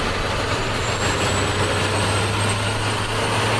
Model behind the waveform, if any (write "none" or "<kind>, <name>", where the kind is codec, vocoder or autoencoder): none